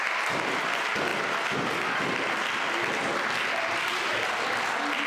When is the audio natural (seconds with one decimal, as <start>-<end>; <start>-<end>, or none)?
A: 0.0-5.1